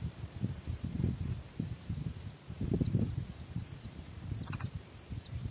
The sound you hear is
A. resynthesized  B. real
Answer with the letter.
A